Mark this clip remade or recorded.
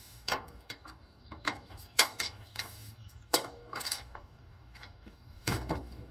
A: remade